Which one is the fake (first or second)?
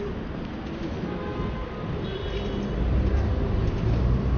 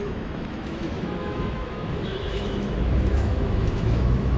second